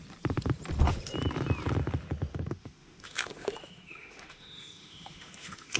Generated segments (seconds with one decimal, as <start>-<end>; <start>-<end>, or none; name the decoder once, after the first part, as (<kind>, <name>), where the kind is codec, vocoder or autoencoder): 2.3-5.8 (autoencoder, DAC-VAE)